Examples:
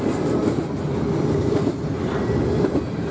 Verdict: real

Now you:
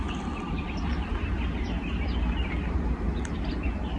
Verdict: real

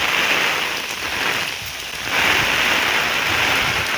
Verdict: real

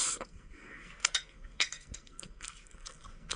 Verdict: fake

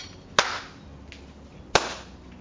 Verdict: real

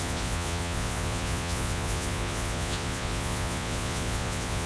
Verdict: fake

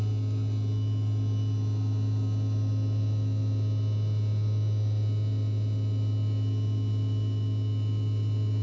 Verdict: real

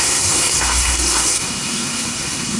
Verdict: fake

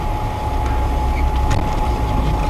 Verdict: real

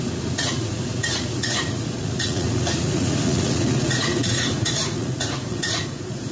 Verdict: fake